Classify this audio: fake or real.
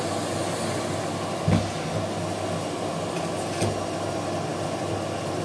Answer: real